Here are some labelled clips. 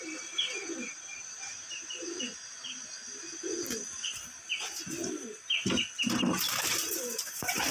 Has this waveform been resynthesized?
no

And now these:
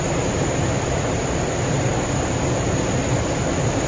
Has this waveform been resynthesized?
no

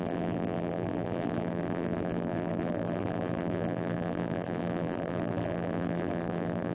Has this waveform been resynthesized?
yes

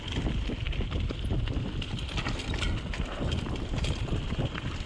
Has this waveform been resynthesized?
no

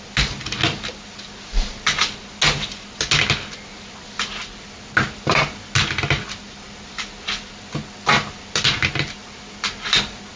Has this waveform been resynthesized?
no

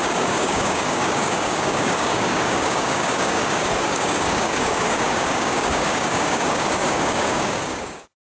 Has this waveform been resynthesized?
yes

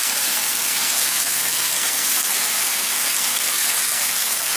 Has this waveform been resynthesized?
yes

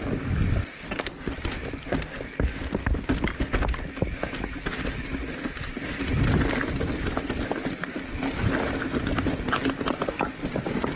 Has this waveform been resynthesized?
no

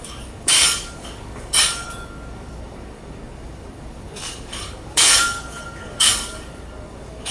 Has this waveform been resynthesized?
yes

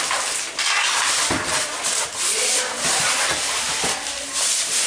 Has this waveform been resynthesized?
no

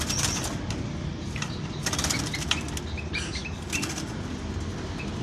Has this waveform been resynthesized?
no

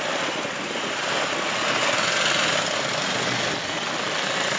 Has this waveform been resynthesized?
no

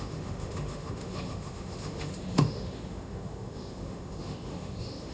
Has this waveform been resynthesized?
yes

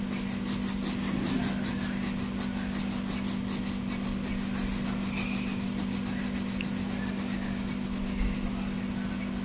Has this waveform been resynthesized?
no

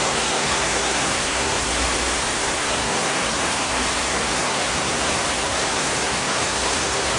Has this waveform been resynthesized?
yes